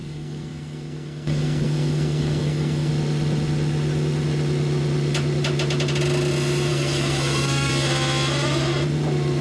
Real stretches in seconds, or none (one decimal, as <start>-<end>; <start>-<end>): 2.9-6.7; 7.7-9.4